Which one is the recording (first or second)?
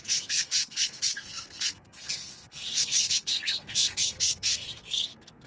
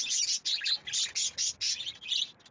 second